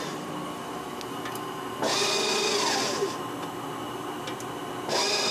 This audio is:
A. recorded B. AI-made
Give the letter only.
A